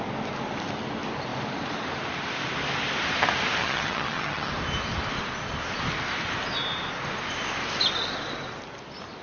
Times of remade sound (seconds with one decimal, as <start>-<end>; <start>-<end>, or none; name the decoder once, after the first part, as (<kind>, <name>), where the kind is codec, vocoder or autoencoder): 3.6-4.5 (vocoder, HiFi-GAN)